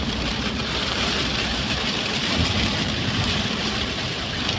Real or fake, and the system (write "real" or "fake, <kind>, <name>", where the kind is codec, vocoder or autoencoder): fake, vocoder, BigVGAN v2